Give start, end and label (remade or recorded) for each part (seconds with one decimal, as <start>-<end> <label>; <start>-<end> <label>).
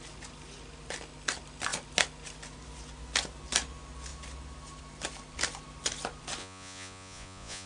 0.0-6.4 recorded; 6.4-7.7 remade